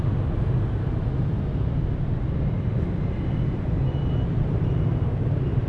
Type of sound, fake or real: real